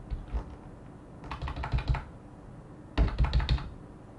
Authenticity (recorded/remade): recorded